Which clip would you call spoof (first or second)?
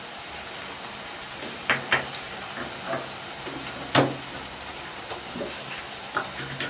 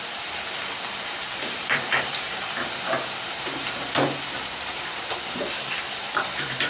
second